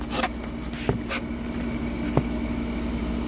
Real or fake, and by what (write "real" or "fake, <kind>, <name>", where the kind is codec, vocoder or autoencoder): real